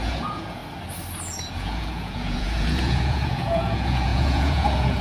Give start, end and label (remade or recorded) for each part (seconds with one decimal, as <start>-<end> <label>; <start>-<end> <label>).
0.0-0.6 remade; 0.6-1.5 recorded; 1.5-5.0 remade